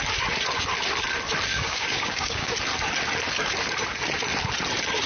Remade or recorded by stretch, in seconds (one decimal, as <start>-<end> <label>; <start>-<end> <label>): 0.0-1.5 recorded; 1.5-2.5 remade; 2.5-5.1 recorded